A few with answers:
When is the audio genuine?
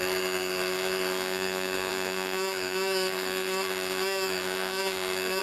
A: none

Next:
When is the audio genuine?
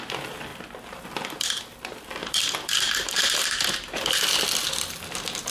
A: 0.0-2.2; 4.2-5.5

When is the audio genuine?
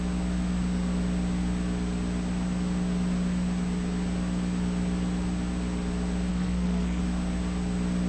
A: 0.0-6.3; 7.0-8.1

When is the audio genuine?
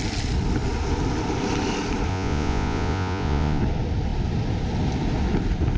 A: 0.0-2.1; 3.6-5.8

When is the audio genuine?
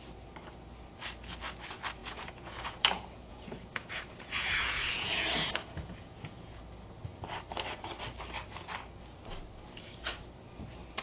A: 0.0-2.0; 6.6-11.0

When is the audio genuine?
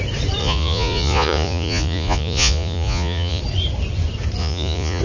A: 0.0-0.4; 3.4-4.4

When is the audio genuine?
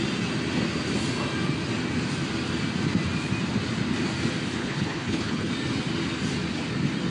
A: 0.0-4.6; 5.5-7.1